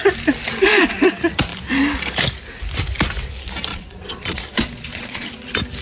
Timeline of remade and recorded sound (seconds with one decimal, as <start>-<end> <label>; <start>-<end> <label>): 0.0-3.7 recorded; 3.7-5.3 remade; 5.3-5.8 recorded